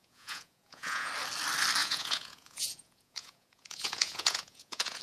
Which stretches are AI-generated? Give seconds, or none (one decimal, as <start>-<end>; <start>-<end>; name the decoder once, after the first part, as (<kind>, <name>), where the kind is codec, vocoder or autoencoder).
0.0-1.1 (vocoder, Vocos); 1.8-5.0